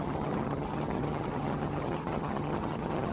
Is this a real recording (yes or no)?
no